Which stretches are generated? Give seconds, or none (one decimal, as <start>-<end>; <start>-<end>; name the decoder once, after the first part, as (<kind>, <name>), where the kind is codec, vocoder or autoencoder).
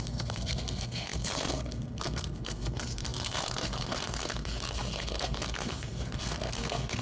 0.0-7.0 (codec, SNAC)